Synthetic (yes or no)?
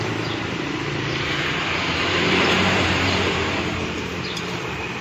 yes